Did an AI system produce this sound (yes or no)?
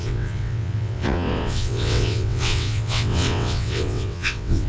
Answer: yes